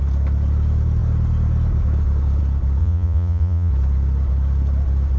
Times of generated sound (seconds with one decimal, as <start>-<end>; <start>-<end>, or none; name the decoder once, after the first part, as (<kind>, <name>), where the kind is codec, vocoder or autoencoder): 2.8-3.7 (vocoder, Vocos)